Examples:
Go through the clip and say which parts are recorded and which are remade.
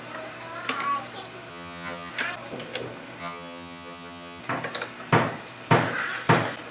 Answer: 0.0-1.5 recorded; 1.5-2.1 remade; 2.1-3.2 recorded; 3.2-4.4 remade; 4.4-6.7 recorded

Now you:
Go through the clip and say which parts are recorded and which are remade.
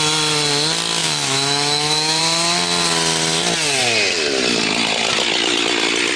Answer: 0.0-1.0 recorded; 1.0-2.2 remade; 2.2-6.2 recorded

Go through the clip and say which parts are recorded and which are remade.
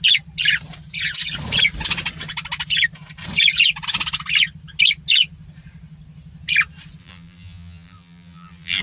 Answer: 0.0-7.0 recorded; 7.0-8.8 remade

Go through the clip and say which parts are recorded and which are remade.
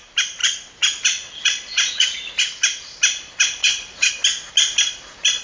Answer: 0.0-0.4 recorded; 0.4-2.3 remade; 2.3-3.6 recorded; 3.6-4.1 remade; 4.1-5.4 recorded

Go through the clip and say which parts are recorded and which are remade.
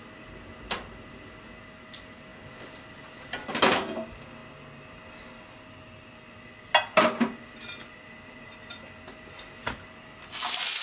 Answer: 0.0-10.8 recorded